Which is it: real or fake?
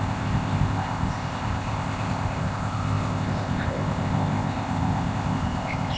fake